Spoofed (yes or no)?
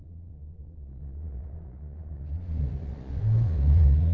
yes